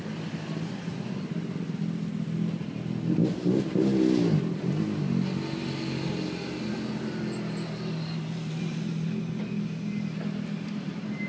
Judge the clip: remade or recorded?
recorded